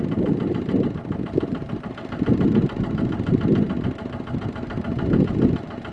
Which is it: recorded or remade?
recorded